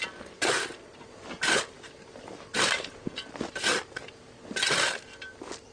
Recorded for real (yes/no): yes